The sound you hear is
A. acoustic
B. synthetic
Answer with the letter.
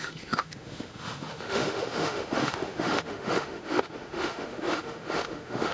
B